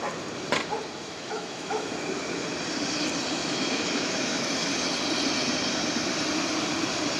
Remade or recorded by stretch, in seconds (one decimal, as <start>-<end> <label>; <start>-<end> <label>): 0.0-1.0 recorded; 1.0-1.9 remade; 1.9-3.4 recorded; 3.4-4.7 remade; 4.7-7.2 recorded